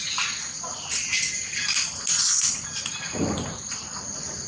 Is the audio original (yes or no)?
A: yes